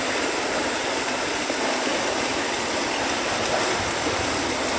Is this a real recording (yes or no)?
yes